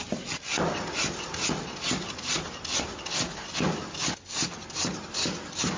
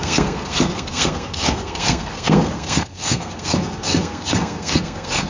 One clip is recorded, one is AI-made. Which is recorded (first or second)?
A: first